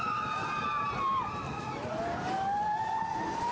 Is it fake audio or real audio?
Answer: real